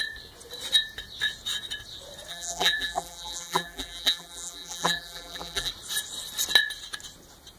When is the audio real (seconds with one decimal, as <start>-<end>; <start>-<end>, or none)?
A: 0.0-2.3; 5.7-7.6